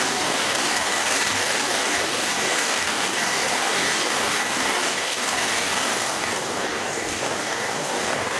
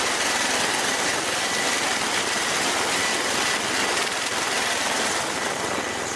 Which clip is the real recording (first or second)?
second